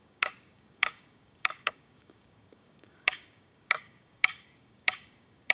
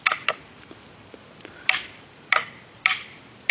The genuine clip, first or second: second